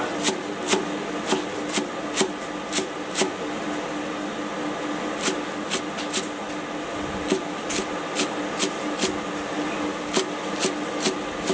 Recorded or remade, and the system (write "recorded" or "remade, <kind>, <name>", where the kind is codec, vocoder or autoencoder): recorded